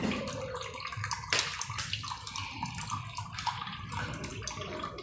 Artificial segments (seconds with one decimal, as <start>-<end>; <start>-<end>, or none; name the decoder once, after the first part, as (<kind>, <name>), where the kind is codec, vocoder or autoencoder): 1.5-3.8 (vocoder, BigVGAN v2)